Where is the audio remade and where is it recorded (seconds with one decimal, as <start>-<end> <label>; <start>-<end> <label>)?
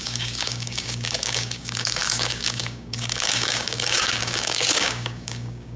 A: 0.0-5.8 remade